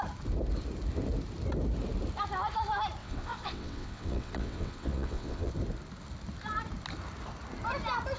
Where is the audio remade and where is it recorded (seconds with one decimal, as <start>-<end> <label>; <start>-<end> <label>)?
0.0-3.0 recorded; 3.0-5.5 remade; 5.5-8.2 recorded